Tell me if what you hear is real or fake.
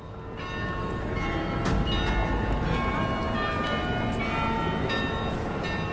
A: real